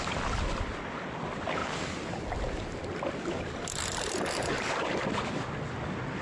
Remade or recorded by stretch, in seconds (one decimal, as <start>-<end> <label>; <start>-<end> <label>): 0.0-6.2 recorded